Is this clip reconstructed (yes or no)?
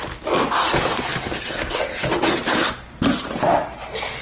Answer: no